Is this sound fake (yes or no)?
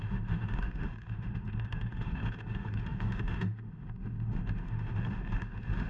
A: yes